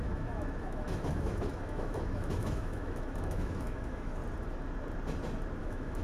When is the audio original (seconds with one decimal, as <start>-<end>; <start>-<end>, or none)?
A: 4.2-5.6